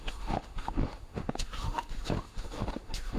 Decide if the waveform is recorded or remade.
remade